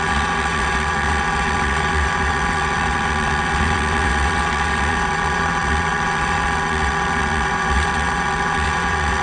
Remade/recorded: remade